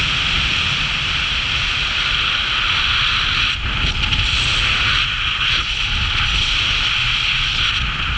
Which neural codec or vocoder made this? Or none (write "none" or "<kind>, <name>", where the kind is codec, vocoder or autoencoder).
none